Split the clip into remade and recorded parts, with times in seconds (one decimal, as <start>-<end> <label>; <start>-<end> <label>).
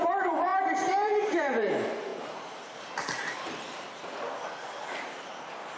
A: 0.0-4.1 remade; 4.1-5.0 recorded; 5.0-5.8 remade